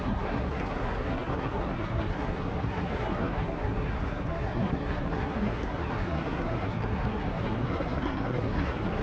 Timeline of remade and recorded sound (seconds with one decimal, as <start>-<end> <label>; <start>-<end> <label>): 0.0-9.0 remade